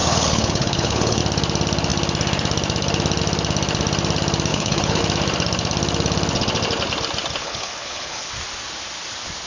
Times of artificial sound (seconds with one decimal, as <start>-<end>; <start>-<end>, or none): 0.0-1.2; 4.5-5.0; 7.4-8.3